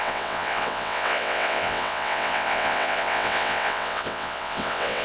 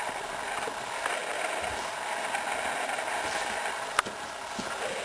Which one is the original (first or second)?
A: second